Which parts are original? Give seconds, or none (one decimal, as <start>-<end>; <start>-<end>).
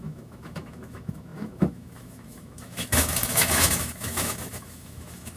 none